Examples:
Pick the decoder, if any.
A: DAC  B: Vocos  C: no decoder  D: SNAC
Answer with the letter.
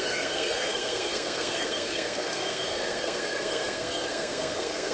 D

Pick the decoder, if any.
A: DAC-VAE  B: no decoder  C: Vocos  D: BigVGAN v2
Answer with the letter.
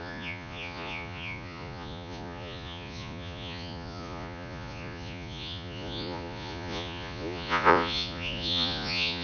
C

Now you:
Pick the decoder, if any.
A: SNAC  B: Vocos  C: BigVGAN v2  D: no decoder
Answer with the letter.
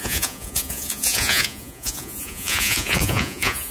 B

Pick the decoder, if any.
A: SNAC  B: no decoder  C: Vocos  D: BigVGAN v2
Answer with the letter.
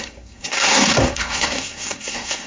A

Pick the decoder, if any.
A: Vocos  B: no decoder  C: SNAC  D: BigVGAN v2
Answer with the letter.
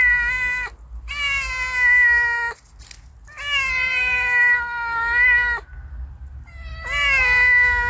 B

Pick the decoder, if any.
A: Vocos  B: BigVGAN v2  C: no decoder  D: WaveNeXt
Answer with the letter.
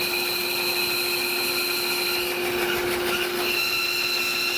C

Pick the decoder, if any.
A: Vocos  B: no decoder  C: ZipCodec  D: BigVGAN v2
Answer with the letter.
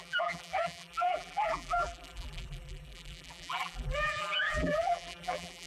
D